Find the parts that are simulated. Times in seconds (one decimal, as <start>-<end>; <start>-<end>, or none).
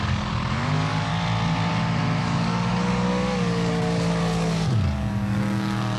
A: 0.0-1.1; 2.2-6.0